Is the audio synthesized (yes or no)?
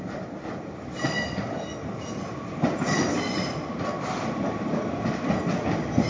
no